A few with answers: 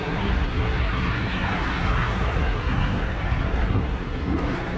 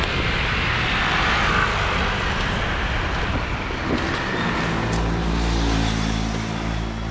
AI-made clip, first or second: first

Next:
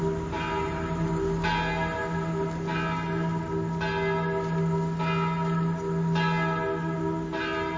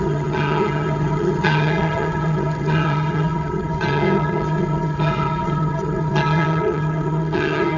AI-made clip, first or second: second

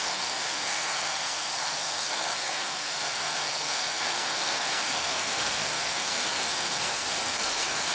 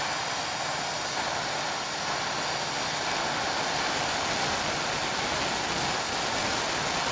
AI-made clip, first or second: first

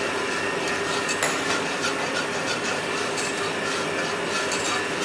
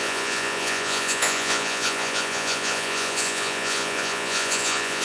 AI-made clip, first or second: second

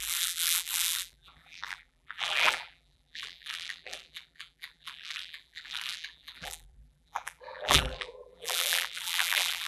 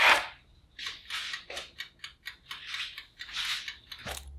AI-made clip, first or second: first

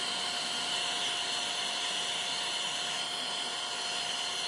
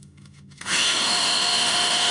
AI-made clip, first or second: second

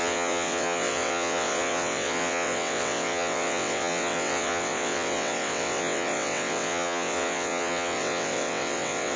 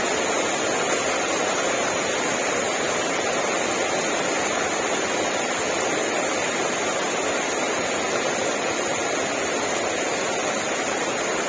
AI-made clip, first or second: first